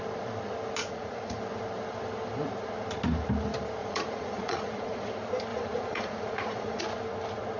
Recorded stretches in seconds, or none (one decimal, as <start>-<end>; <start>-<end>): 0.0-0.8; 1.4-3.8; 5.0-5.5; 6.8-7.6